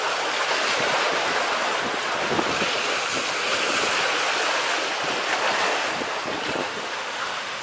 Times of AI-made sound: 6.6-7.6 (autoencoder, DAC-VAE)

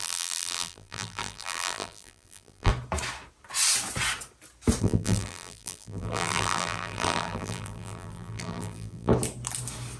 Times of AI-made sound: 0.0-2.7 (vocoder, BigVGAN v2); 4.8-9.1

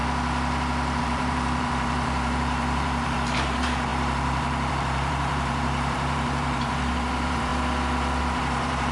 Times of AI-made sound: 1.0-7.5 (vocoder, BigVGAN v2); 8.2-8.9

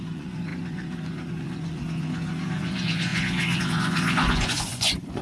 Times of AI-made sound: 0.0-5.2 (vocoder, Vocos)

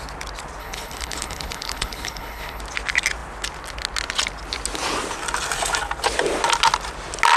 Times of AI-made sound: 0.6-2.6 (codec, HILCodec)

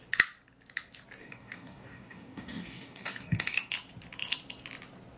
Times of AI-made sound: 1.2-3.7 (codec, DAC)